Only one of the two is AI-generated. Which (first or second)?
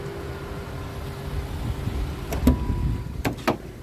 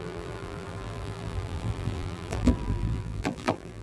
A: second